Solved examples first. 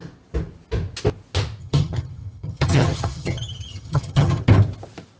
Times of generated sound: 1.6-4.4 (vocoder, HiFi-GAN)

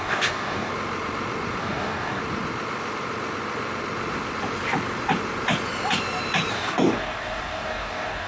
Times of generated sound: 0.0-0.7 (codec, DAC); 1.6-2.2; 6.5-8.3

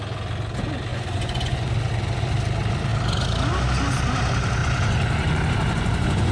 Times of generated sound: 0.9-1.7 (vocoder, Vocos); 4.6-6.3